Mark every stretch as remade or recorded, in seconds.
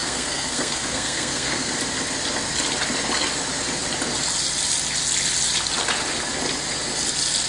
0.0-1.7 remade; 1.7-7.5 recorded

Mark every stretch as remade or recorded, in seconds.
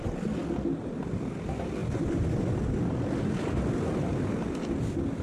0.0-5.2 recorded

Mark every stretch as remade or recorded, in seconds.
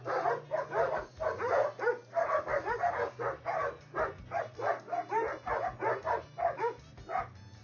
0.0-7.6 recorded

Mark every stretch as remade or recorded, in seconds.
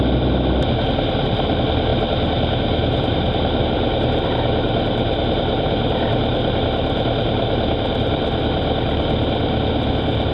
0.0-10.3 recorded